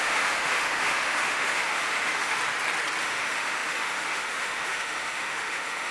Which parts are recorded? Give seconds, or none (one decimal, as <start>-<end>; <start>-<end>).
2.4-3.0